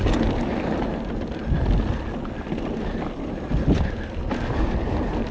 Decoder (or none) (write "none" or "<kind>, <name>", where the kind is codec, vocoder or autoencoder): none